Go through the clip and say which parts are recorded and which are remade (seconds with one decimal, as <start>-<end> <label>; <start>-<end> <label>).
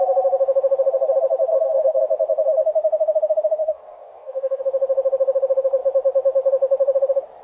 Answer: 0.0-1.5 recorded; 1.5-2.0 remade; 2.0-3.6 recorded; 3.6-4.6 remade; 4.6-7.4 recorded